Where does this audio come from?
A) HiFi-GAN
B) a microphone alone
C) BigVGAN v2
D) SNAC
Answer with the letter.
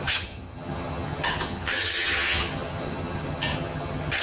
A